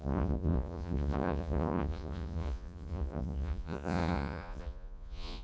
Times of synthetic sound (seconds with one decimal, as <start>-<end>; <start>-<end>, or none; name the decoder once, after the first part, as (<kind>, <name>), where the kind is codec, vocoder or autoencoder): 0.0-5.4 (vocoder, Vocos)